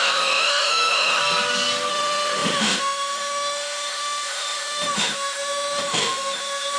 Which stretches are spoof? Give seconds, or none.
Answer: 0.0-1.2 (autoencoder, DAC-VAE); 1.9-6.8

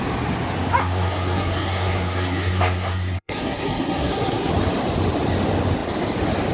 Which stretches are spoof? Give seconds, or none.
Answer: 0.8-4.5 (codec, SNAC)

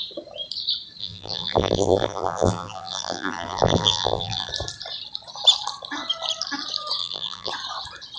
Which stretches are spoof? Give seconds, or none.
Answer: 1.0-4.5 (vocoder, BigVGAN v2); 7.0-7.5

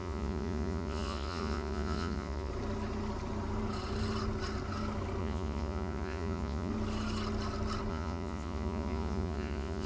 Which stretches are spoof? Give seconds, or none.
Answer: 0.0-2.5 (vocoder, Vocos); 5.2-6.7; 7.9-9.9

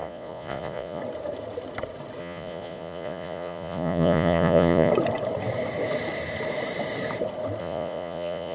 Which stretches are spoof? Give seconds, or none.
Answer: 0.0-1.0 (vocoder, Vocos); 2.2-4.9; 7.6-8.5

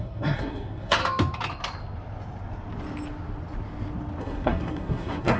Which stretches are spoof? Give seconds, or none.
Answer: 0.0-1.0 (codec, SNAC); 4.2-5.4

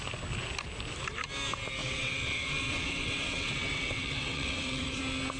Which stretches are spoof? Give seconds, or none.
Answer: 1.8-5.0 (vocoder, WaveNeXt)

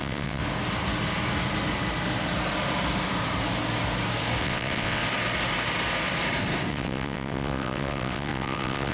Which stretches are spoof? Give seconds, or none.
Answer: 0.0-0.4 (vocoder, WaveNeXt); 4.4-5.0; 6.7-8.9